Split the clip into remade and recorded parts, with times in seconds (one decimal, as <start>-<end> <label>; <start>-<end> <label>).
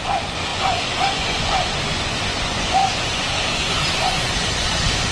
0.0-5.1 remade